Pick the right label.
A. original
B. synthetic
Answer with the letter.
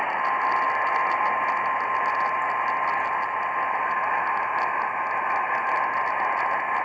A